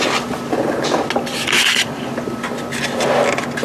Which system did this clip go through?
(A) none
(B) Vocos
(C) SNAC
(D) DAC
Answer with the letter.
A